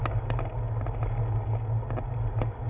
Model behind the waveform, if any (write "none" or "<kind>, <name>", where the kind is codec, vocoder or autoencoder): none